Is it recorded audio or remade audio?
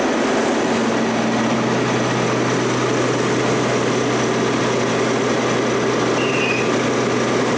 recorded